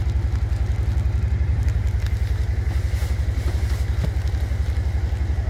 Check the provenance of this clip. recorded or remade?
recorded